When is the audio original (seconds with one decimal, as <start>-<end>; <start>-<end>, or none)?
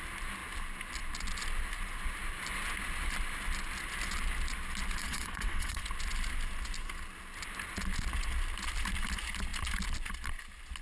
0.0-5.0; 5.8-10.8